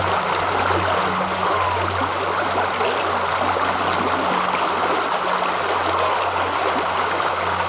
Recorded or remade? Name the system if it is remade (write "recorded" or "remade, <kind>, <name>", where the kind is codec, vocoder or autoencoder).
recorded